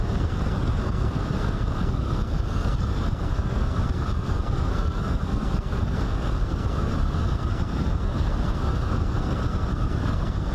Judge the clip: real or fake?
fake